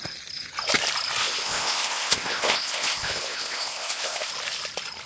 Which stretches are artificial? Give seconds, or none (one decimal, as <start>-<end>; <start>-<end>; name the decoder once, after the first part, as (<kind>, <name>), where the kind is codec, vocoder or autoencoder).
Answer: 1.2-4.3 (codec, ZipCodec)